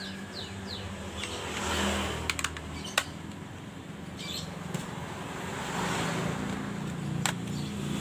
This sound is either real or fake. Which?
real